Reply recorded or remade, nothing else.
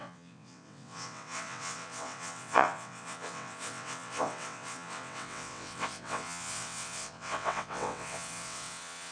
remade